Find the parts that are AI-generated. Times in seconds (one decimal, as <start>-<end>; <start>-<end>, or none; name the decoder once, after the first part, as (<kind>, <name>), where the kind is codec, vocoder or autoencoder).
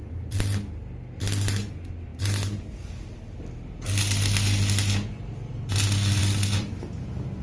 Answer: 6.2-7.0 (vocoder, BigVGAN v2)